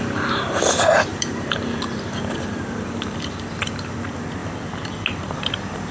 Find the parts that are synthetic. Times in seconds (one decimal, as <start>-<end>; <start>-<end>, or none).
1.1-3.7